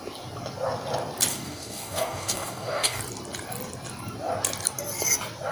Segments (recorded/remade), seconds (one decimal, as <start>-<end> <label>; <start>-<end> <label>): 0.0-1.3 recorded; 1.3-3.0 remade; 3.0-5.5 recorded